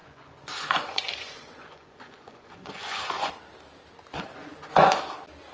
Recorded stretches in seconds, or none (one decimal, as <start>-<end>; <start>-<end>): 3.3-4.1; 5.0-5.5